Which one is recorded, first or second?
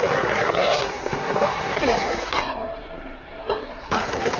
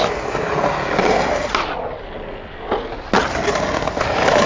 second